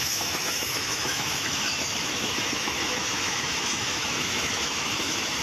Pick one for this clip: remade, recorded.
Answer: remade